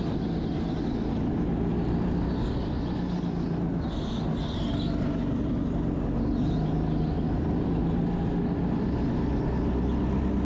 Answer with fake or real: real